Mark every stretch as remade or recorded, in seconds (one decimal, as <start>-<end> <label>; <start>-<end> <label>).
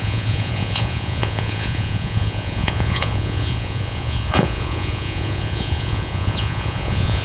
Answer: 0.0-7.2 remade